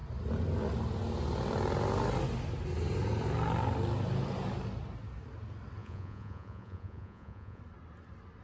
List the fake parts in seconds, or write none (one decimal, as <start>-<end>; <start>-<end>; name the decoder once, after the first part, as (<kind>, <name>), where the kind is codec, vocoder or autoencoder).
5.8-7.6 (vocoder, Vocos)